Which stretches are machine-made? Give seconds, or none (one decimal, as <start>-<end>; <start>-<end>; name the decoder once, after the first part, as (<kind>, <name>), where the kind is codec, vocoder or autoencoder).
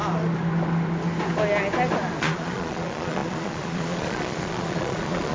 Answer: 2.2-5.3 (vocoder, Vocos)